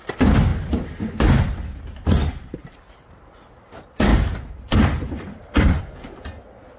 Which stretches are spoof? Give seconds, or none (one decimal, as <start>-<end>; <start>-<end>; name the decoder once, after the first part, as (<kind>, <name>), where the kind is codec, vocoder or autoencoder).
2.2-3.2 (vocoder, BigVGAN v2); 4.1-5.8

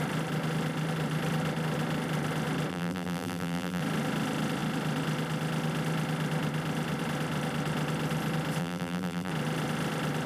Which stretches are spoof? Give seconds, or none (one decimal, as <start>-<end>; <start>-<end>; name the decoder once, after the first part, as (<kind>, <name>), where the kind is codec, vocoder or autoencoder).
2.7-3.8 (vocoder, BigVGAN v2); 8.6-9.3

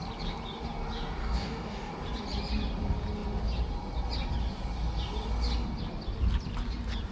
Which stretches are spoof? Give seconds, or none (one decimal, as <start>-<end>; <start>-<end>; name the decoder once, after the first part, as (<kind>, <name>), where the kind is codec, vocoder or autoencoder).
1.2-1.9 (codec, DAC)

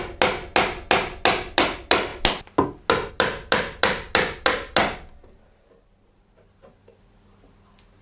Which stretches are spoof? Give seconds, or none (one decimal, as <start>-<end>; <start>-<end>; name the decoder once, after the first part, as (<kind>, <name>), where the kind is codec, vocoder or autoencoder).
none

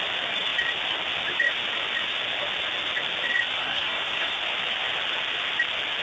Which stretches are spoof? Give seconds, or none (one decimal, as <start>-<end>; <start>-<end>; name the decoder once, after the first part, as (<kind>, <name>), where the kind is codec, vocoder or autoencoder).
3.6-4.4 (codec, SNAC)

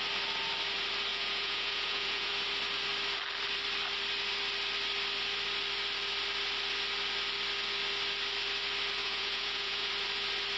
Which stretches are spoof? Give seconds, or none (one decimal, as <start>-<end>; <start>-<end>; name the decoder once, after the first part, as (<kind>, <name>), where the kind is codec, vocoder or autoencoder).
1.1-2.3 (vocoder, Vocos); 9.0-9.9

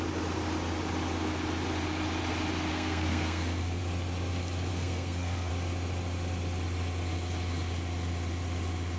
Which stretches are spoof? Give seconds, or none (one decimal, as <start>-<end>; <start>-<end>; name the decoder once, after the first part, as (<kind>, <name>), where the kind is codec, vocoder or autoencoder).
2.7-3.8 (codec, SNAC); 4.7-5.5